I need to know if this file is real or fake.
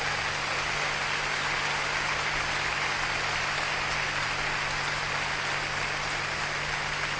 real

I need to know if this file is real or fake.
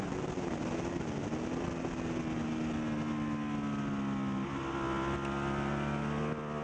real